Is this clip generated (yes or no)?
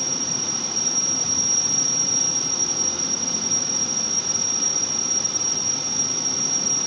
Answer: yes